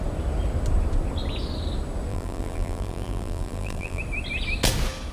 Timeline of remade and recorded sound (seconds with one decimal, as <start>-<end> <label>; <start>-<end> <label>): 0.0-2.1 recorded; 2.1-4.0 remade; 4.0-5.1 recorded